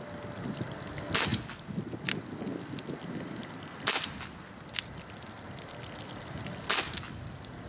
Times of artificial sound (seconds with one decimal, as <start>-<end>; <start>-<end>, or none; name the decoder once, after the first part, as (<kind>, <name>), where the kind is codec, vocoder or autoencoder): none